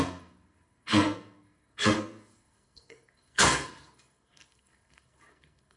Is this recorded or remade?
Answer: remade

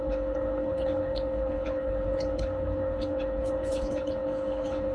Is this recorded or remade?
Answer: remade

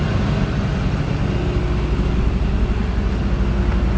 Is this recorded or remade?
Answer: recorded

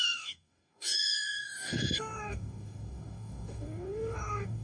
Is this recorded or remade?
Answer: remade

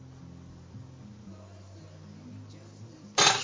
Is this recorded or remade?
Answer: recorded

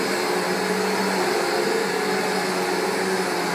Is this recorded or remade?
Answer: recorded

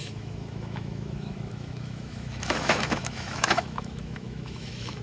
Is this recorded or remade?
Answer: remade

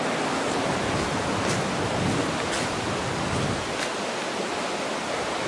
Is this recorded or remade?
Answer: recorded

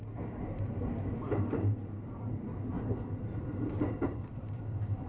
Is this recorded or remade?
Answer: remade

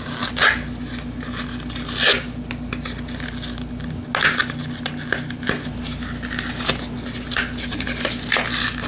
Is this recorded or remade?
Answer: recorded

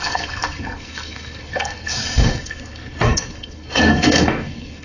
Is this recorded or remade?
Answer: remade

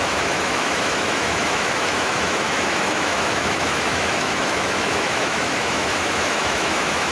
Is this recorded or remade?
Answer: remade